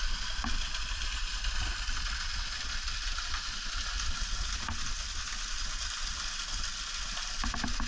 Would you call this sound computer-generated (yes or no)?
no